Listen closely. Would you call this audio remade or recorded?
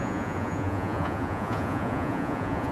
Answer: remade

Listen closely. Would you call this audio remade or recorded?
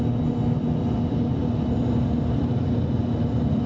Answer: recorded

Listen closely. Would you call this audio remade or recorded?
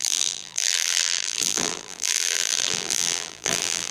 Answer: remade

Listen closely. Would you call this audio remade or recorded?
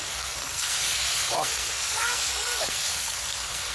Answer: remade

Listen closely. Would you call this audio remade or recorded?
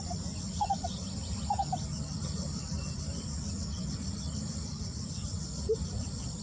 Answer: recorded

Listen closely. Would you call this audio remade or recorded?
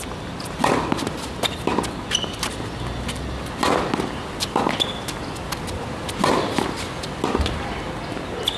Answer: recorded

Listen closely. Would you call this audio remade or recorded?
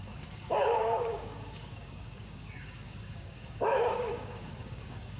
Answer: remade